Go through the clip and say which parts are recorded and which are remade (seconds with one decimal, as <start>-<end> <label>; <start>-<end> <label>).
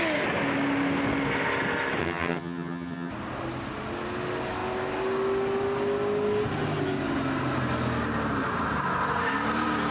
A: 0.0-2.0 recorded; 2.0-3.1 remade; 3.1-9.9 recorded